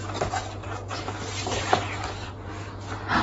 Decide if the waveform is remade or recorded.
recorded